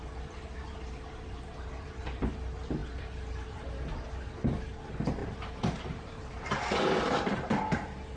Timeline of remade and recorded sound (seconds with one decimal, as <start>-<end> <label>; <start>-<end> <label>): 0.0-5.2 recorded; 5.2-6.6 remade; 6.6-8.2 recorded